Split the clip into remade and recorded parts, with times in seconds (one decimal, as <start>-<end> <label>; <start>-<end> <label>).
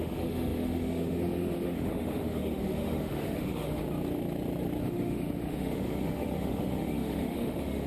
0.0-3.8 remade; 3.8-4.8 recorded; 4.8-7.9 remade